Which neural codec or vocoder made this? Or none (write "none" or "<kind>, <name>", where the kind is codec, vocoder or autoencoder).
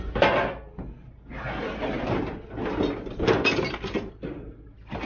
none